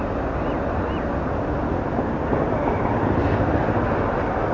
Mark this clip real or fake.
real